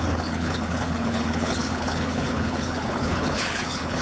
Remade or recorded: remade